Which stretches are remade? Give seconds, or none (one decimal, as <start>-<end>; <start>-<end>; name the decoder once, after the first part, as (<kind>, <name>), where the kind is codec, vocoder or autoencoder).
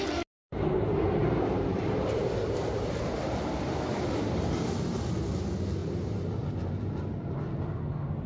0.4-5.1 (vocoder, BigVGAN v2); 5.8-6.3